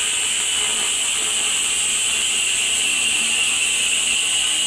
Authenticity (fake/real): fake